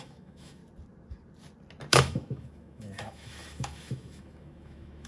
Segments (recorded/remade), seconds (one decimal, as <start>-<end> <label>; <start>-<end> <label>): 0.0-0.6 remade; 0.6-1.9 recorded; 1.9-5.1 remade